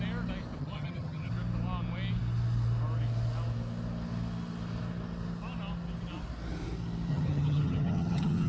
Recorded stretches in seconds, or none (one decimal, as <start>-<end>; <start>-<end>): 0.0-0.6; 1.3-7.1